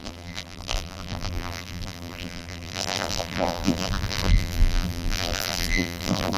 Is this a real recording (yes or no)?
no